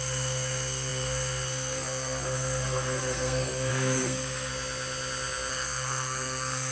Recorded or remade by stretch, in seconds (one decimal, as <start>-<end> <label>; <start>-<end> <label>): 0.0-4.5 remade; 4.5-5.5 recorded; 5.5-6.7 remade